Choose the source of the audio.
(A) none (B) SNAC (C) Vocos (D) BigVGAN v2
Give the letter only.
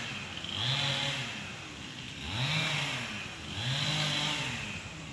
A